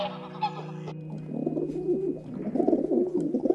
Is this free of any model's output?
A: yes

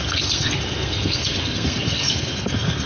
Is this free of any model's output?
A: no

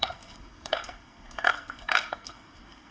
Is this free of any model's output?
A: no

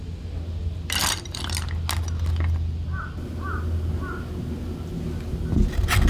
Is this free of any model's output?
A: yes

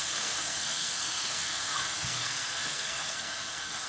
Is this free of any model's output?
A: no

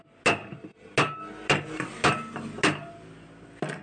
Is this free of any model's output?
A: yes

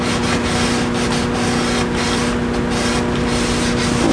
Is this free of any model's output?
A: yes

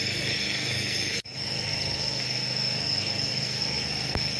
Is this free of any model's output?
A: no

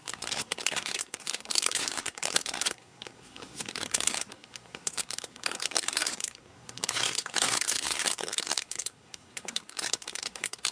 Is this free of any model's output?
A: no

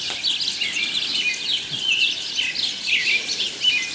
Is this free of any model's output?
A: yes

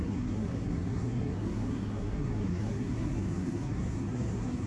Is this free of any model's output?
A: no